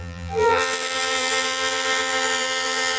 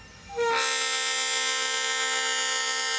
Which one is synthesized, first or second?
first